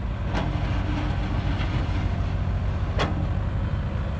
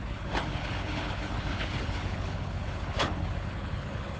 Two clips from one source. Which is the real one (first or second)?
first